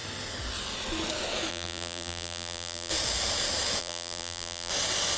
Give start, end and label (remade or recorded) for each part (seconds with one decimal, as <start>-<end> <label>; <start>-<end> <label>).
0.0-1.5 recorded; 1.5-2.9 remade; 2.9-3.8 recorded; 3.8-4.7 remade; 4.7-5.2 recorded